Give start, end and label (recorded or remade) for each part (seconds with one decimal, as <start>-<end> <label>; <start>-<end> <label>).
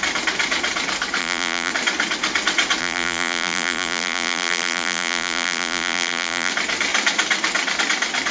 0.0-1.2 recorded; 1.2-1.7 remade; 1.7-2.8 recorded; 2.8-6.5 remade; 6.5-8.3 recorded